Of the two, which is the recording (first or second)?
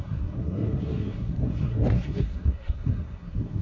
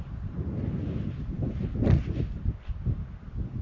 second